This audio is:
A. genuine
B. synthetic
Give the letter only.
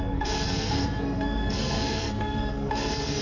B